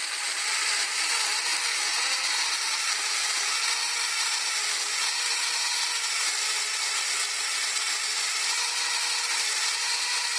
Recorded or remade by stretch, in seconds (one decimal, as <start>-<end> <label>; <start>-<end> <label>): 0.0-10.4 recorded